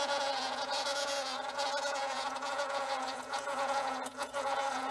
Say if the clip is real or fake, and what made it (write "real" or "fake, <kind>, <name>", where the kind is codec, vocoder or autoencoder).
fake, vocoder, Vocos